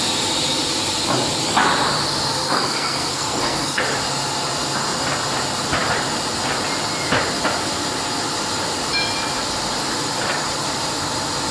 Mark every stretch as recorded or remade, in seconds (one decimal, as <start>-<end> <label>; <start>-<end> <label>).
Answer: 0.0-2.4 recorded; 2.4-3.8 remade; 3.8-11.5 recorded